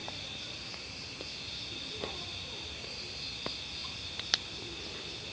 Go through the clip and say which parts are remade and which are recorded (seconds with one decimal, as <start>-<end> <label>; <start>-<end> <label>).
0.0-3.2 remade; 3.2-3.8 recorded; 3.8-4.6 remade; 4.6-5.3 recorded